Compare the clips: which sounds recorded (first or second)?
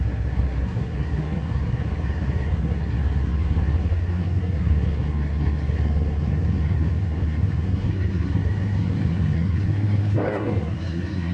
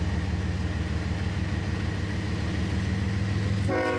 second